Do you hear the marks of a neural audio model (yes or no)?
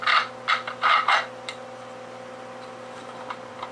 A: no